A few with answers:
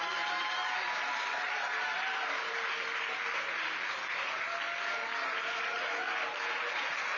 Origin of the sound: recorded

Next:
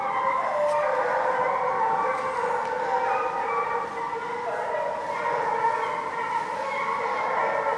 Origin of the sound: recorded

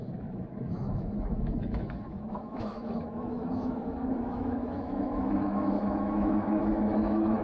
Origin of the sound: remade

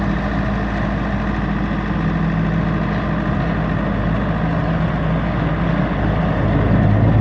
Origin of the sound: recorded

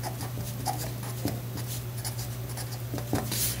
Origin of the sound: recorded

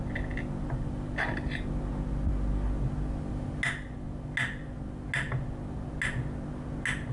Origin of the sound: recorded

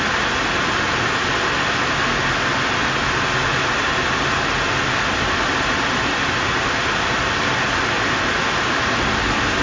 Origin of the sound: recorded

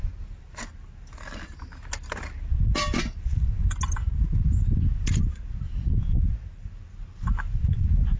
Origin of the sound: recorded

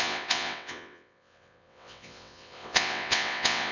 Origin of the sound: remade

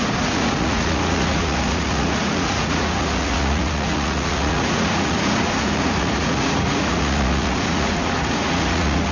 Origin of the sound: remade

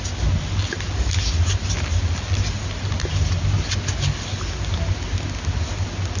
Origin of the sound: recorded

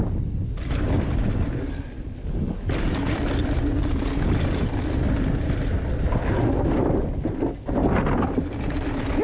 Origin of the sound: recorded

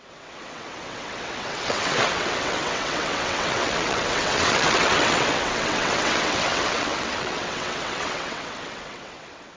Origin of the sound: remade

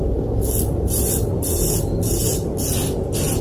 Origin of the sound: recorded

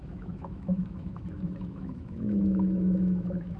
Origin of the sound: remade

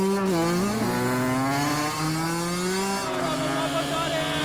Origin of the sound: recorded